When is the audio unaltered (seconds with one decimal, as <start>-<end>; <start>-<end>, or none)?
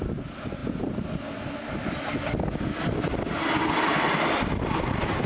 0.0-5.3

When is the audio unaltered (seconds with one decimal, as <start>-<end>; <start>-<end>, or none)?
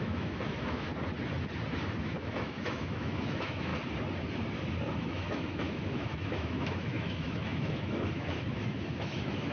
0.9-2.0; 3.7-5.0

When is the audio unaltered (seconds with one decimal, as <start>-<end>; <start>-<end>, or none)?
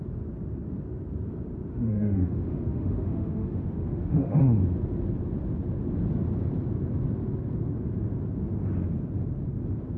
0.0-1.7; 4.4-10.0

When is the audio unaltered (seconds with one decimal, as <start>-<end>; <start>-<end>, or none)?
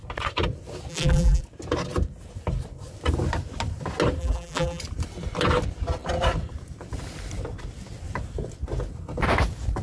0.0-0.9; 1.4-4.2; 4.8-9.8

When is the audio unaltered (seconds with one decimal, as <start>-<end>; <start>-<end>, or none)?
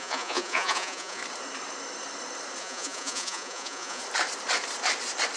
1.2-2.6; 4.0-5.4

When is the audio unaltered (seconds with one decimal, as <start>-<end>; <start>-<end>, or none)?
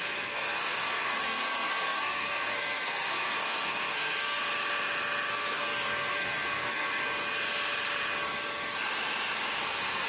4.4-5.3; 7.1-9.6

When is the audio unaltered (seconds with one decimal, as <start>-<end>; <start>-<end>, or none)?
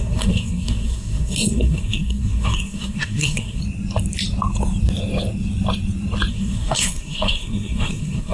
3.6-6.3